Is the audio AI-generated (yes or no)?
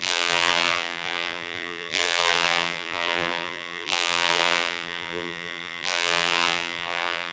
yes